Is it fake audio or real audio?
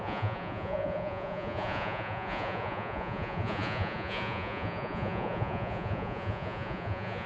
fake